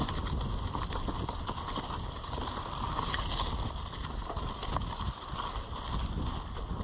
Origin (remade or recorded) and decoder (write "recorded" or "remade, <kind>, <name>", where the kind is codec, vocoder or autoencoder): recorded